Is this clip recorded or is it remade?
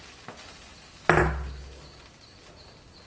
recorded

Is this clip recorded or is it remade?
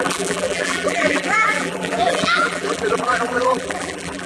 remade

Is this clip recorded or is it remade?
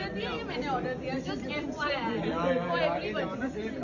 recorded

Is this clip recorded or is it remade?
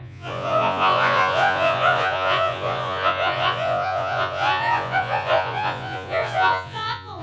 remade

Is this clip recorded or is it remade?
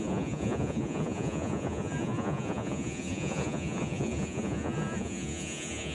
remade